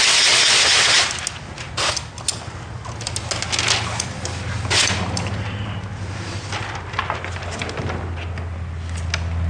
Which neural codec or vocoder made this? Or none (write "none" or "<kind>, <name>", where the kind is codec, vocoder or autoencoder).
none